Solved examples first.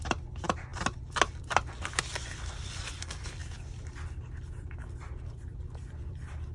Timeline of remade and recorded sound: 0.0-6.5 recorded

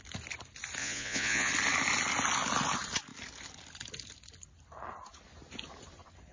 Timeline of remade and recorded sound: 0.0-0.8 recorded; 0.8-1.5 remade; 1.5-6.3 recorded

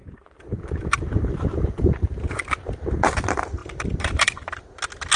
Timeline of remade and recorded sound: 0.0-3.1 remade; 3.1-3.6 recorded; 3.6-4.5 remade; 4.5-5.2 recorded

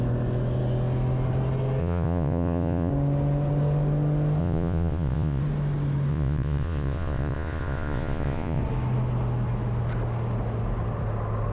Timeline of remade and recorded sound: 0.0-1.8 recorded; 1.8-2.9 remade; 2.9-4.4 recorded; 4.4-5.4 remade; 5.4-6.1 recorded; 6.1-8.6 remade; 8.6-11.5 recorded